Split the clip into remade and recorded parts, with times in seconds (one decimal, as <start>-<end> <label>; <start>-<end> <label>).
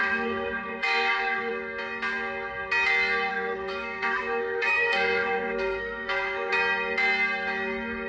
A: 0.0-1.5 remade; 1.5-3.3 recorded; 3.3-6.5 remade; 6.5-8.1 recorded